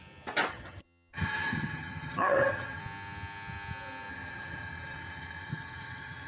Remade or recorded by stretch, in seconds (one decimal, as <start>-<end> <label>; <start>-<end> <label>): 0.0-0.5 recorded; 0.5-2.8 remade; 2.8-4.1 recorded; 4.1-6.3 remade